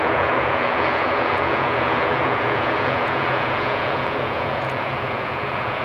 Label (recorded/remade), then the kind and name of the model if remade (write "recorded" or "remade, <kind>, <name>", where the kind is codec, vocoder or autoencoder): remade, vocoder, Vocos